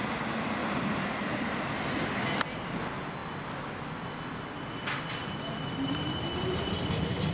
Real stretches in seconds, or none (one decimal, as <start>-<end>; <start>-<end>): 0.0-0.6; 1.5-5.2; 6.8-7.3